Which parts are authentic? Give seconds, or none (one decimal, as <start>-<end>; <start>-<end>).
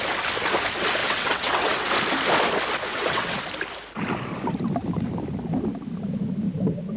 0.0-1.0; 1.9-2.9; 3.4-7.0